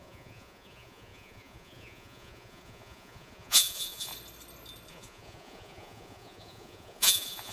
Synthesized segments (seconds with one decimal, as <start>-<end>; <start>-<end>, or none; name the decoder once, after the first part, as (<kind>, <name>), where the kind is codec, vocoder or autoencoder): 0.0-4.1 (vocoder, Vocos); 4.9-7.5